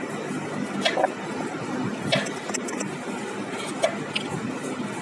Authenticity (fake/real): real